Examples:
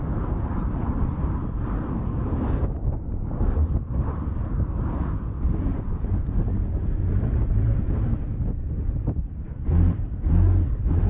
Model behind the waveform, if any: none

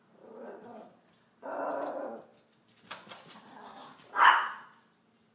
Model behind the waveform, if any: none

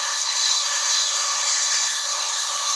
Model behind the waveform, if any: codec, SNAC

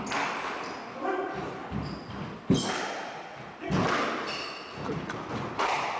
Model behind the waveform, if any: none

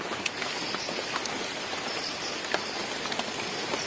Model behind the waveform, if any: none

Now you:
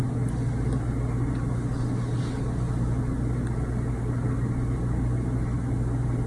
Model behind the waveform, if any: none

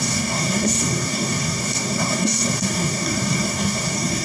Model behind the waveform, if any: codec, SNAC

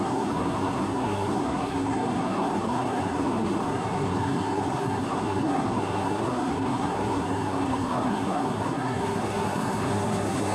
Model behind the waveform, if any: codec, SNAC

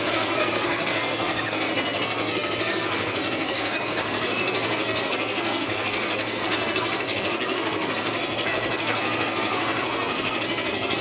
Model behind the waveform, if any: codec, SNAC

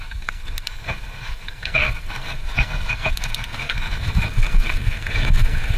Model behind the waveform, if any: codec, SNAC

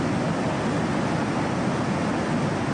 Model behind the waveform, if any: none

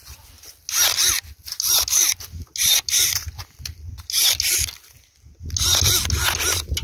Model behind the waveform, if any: none